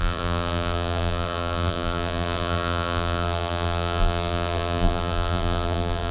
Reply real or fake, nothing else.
fake